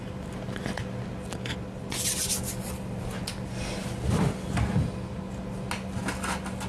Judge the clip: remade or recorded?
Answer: recorded